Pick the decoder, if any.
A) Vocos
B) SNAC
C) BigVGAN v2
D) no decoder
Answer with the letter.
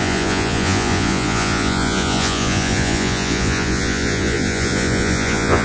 A